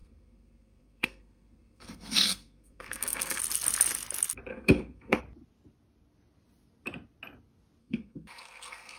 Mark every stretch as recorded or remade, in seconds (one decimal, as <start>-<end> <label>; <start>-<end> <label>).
0.0-3.4 remade; 3.4-4.5 recorded; 4.5-5.2 remade; 5.2-7.8 recorded; 7.8-9.0 remade